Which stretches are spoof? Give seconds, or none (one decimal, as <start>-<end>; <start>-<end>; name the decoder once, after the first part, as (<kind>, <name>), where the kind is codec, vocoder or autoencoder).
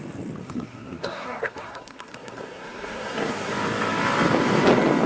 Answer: 0.4-3.5 (codec, SNAC)